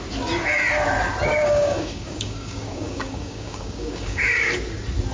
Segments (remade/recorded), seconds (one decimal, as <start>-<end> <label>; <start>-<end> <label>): 0.0-1.4 recorded; 1.4-4.5 remade; 4.5-5.1 recorded